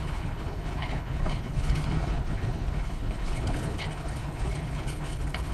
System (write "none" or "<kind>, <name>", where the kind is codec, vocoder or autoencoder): codec, HILCodec